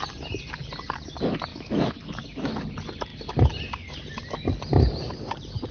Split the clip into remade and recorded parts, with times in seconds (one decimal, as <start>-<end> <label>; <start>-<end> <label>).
0.0-1.5 recorded; 1.5-2.5 remade; 2.5-5.7 recorded